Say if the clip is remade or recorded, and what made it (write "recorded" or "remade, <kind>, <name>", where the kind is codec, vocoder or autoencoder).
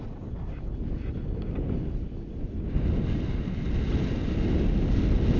recorded